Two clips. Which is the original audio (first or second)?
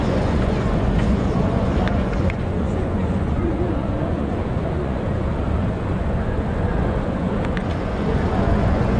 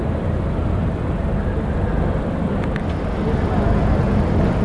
second